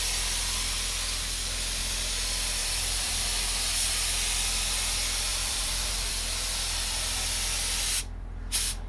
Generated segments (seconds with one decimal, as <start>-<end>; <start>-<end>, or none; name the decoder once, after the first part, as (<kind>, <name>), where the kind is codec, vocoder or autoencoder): 2.6-3.1 (vocoder, BigVGAN v2); 5.3-6.1

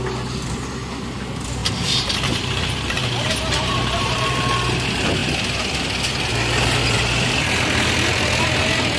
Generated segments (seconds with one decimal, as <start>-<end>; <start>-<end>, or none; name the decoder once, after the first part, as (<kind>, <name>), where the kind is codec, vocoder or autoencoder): 1.6-4.4 (vocoder, BigVGAN v2)

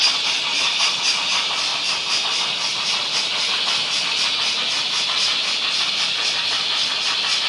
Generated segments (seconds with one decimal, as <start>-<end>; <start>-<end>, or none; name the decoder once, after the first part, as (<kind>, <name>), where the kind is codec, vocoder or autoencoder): 0.5-1.0 (vocoder, BigVGAN v2); 1.7-2.3